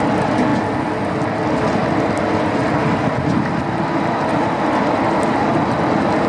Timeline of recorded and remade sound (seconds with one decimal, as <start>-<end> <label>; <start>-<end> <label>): 0.0-0.5 remade; 0.5-4.3 recorded; 4.3-5.4 remade; 5.4-6.3 recorded